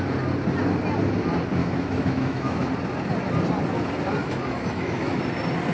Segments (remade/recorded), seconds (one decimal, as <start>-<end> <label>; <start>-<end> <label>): 0.0-1.6 recorded; 1.6-2.7 remade; 2.7-4.2 recorded; 4.2-5.2 remade; 5.2-5.7 recorded